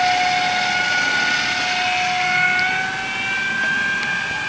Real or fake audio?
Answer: real